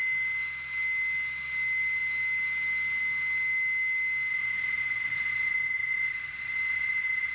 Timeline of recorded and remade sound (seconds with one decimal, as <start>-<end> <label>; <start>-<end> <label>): 0.0-4.3 recorded; 4.3-7.3 remade